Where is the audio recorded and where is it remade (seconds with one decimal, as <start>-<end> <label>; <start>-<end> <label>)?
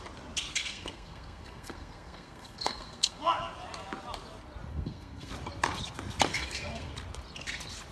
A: 0.0-0.5 recorded; 0.5-3.2 remade; 3.2-4.7 recorded; 4.7-5.3 remade; 5.3-6.3 recorded; 6.3-6.9 remade; 6.9-7.9 recorded